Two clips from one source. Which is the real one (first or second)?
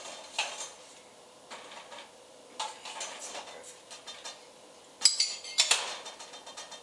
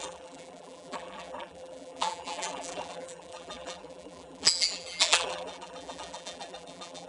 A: first